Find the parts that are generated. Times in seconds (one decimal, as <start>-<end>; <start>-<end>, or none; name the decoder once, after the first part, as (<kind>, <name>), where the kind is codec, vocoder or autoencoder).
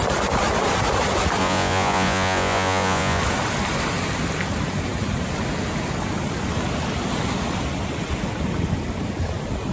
1.4-3.2 (vocoder, Vocos)